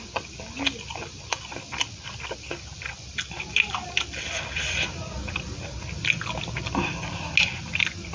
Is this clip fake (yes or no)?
no